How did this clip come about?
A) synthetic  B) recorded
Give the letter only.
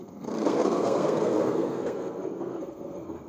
A